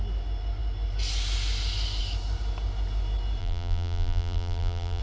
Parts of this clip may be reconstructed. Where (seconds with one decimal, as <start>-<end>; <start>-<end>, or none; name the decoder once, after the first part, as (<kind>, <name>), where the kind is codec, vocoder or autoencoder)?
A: 3.4-5.0 (vocoder, BigVGAN v2)